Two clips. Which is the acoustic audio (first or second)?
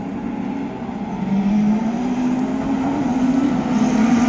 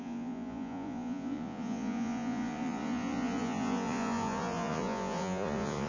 first